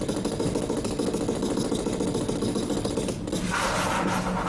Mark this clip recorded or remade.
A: recorded